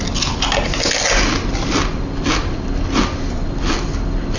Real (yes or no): yes